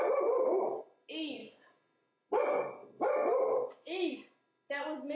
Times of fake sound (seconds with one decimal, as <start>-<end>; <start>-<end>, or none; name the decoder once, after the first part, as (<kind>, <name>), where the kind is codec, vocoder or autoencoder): 1.4-2.4 (vocoder, Vocos)